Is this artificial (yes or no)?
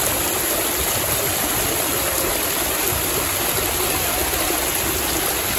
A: no